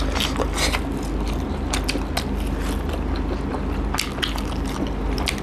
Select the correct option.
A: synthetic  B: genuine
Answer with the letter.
B